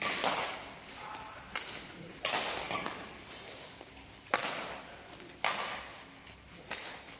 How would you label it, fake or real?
real